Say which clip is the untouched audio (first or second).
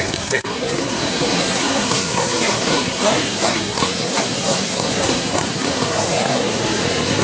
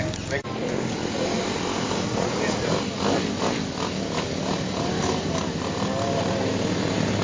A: second